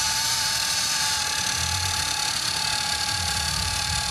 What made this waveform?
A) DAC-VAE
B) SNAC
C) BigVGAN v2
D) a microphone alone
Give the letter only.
C